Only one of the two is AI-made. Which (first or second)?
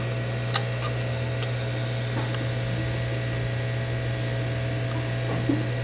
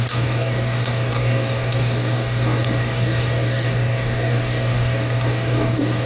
second